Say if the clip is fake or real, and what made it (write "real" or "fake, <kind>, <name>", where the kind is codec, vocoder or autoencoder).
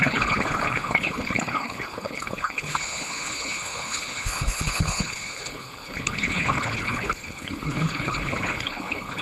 fake, codec, HILCodec